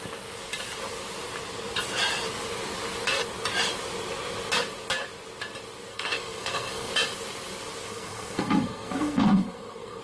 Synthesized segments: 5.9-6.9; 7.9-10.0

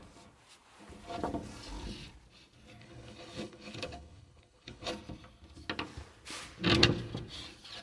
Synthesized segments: 2.8-4.9

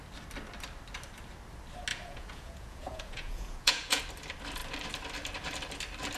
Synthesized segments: 1.9-4.0

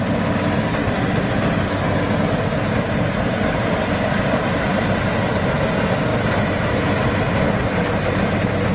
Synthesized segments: none

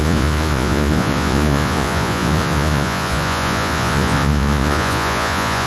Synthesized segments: 0.0-5.7

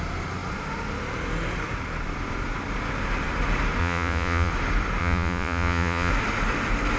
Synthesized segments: 3.8-4.5; 5.0-6.1